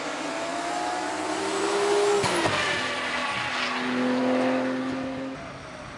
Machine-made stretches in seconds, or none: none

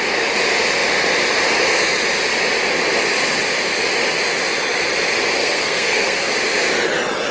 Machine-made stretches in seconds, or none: 5.4-6.3 (codec, SNAC)

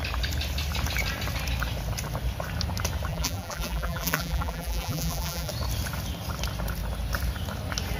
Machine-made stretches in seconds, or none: 3.1-5.5 (vocoder, BigVGAN v2)